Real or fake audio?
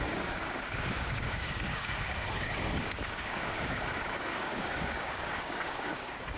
fake